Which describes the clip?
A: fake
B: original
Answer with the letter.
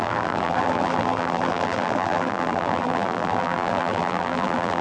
A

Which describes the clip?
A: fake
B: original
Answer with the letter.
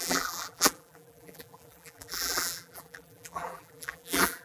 A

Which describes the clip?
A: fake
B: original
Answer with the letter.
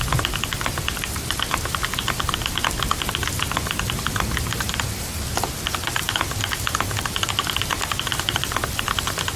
B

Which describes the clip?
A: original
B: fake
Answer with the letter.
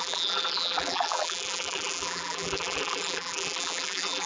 B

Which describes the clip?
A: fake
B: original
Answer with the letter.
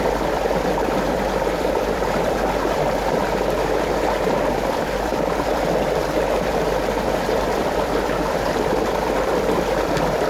A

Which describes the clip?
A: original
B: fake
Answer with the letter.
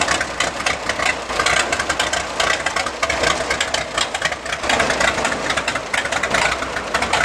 A